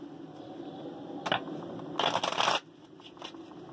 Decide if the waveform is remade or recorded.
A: recorded